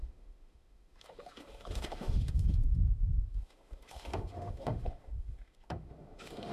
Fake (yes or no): yes